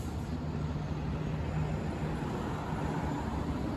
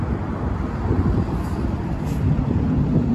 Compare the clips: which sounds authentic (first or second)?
first